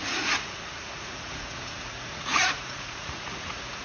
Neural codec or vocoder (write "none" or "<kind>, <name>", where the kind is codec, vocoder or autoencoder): vocoder, Vocos